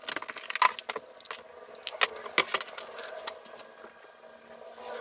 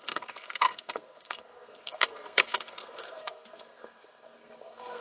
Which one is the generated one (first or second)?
second